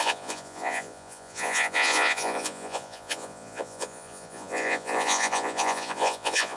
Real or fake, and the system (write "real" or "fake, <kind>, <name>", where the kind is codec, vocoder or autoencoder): fake, vocoder, Vocos